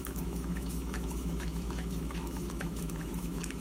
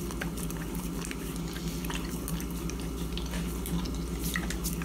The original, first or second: second